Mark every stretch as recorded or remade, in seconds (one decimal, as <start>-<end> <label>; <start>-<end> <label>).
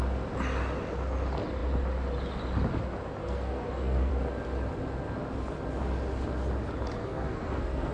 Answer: 0.0-3.2 recorded; 3.2-4.1 remade; 4.1-7.0 recorded; 7.0-7.9 remade